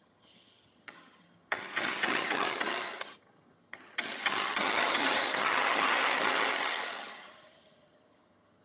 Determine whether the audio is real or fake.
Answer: fake